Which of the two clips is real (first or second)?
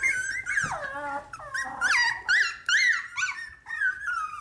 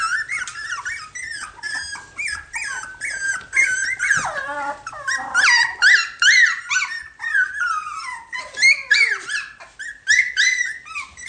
first